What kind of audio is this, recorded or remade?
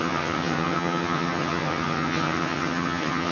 remade